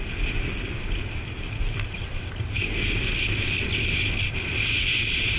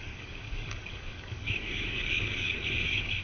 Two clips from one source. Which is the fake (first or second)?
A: second